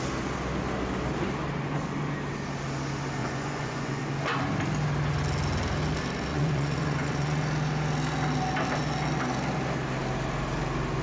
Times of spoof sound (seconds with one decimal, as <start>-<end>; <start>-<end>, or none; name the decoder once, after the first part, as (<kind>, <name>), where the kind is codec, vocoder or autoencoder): 3.2-4.0 (vocoder, Vocos); 6.3-7.4